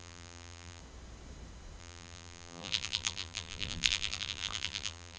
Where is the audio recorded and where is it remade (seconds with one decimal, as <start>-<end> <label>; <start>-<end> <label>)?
0.0-0.8 remade; 0.8-1.8 recorded; 1.8-5.2 remade